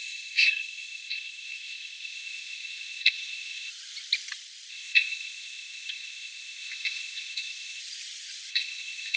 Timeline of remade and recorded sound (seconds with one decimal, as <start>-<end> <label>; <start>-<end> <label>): 0.0-3.7 remade; 3.7-4.7 recorded; 4.7-7.8 remade; 7.8-8.5 recorded; 8.5-9.2 remade